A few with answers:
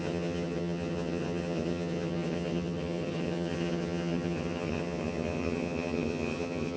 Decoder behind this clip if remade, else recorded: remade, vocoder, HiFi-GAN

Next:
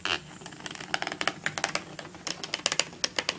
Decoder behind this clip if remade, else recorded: recorded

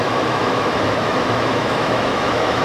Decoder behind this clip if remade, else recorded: remade, autoencoder, DAC-VAE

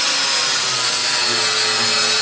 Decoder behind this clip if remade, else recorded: recorded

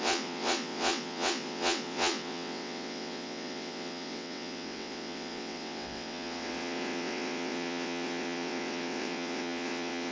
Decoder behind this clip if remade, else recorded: remade, vocoder, WaveNeXt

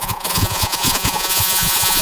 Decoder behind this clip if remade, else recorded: remade, vocoder, Vocos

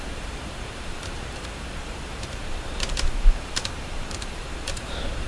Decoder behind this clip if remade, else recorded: remade, vocoder, BigVGAN v2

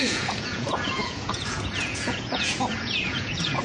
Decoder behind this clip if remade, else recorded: remade, vocoder, Vocos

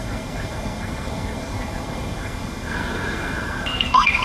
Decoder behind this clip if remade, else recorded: remade, codec, SNAC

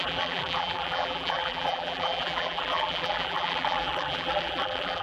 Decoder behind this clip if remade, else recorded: remade, vocoder, BigVGAN v2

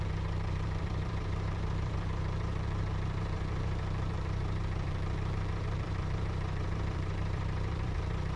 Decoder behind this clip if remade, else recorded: remade, vocoder, BigVGAN v2